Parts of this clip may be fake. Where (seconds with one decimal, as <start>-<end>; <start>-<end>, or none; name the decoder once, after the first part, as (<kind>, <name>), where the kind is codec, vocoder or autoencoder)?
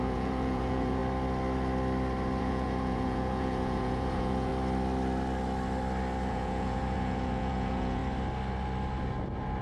0.0-1.0 (vocoder, Vocos); 2.4-4.5; 6.3-8.0